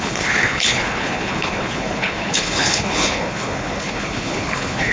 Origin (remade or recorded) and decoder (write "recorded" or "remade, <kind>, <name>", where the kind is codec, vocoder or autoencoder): remade, codec, HILCodec